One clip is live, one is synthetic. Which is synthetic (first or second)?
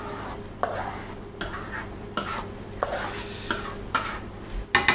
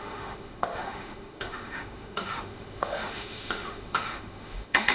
second